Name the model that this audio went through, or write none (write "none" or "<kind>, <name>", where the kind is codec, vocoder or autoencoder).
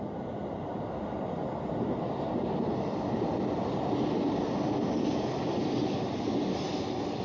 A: none